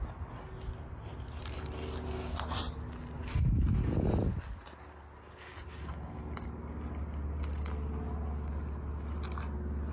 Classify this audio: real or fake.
real